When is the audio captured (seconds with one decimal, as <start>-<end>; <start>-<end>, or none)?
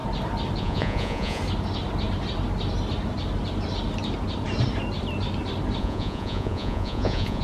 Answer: 0.0-0.6; 1.4-5.8